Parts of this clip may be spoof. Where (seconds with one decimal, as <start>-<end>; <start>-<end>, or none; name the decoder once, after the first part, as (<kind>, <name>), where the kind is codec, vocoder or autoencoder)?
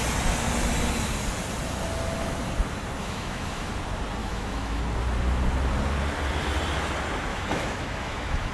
3.0-3.7 (autoencoder, DAC-VAE); 4.2-4.8; 7.3-8.5